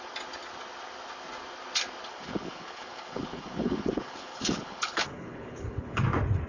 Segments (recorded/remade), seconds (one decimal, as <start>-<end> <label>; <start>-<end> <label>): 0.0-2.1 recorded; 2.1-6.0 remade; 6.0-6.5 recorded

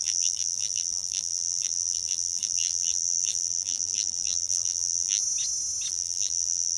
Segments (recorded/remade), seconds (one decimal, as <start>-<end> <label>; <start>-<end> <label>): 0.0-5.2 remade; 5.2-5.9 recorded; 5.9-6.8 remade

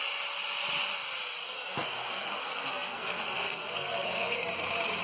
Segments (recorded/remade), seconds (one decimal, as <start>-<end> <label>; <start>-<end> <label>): 0.0-1.4 recorded; 1.4-4.4 remade; 4.4-5.0 recorded